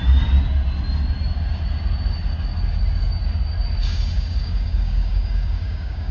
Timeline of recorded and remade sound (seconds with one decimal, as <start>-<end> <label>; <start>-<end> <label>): 0.0-3.8 recorded; 3.8-6.1 remade